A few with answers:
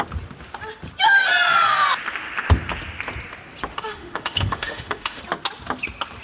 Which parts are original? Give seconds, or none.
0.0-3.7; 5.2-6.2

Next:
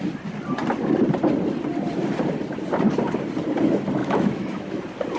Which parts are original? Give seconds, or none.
0.0-4.0; 4.8-5.2

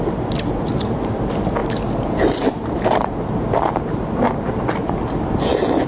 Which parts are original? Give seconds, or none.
0.0-1.6; 4.3-5.9

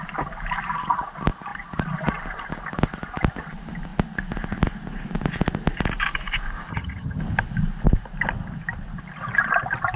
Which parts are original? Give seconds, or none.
0.0-6.7; 7.2-10.0

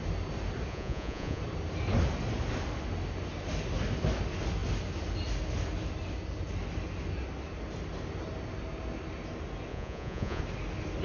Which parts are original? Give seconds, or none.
0.0-0.7; 1.4-9.7; 10.4-11.0

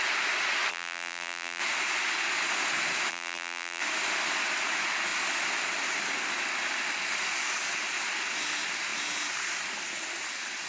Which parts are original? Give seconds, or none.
0.0-0.7; 1.6-3.1; 3.8-10.7